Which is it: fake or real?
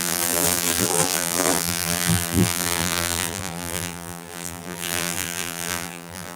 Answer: fake